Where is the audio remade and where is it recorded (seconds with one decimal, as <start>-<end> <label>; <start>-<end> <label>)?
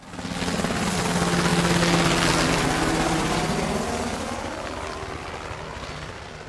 0.0-6.5 recorded